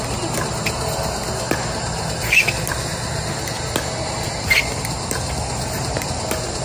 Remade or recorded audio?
recorded